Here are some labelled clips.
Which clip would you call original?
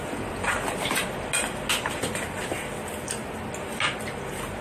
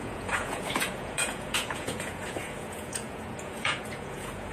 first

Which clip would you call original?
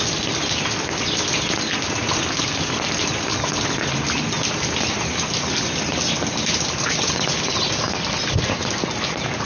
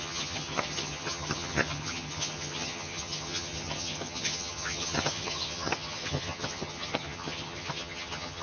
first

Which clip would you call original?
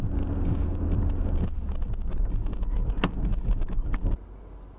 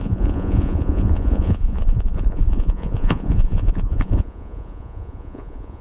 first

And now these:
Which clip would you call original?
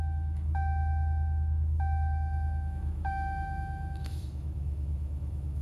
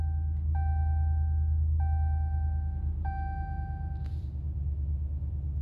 second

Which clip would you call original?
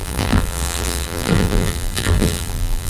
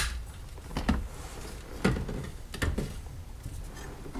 second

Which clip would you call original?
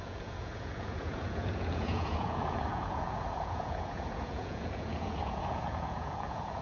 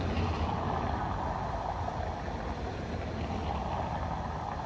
second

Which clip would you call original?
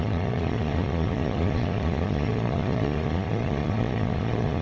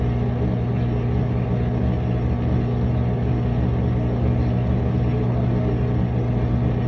second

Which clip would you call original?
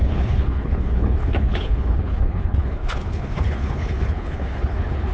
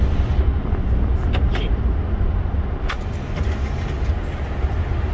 second